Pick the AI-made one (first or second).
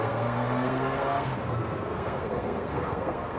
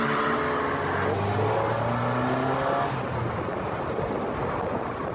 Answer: first